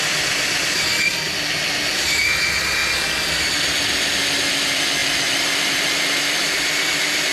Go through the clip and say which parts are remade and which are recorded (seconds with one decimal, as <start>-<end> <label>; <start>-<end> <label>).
0.0-2.8 remade; 2.8-4.5 recorded; 4.5-7.3 remade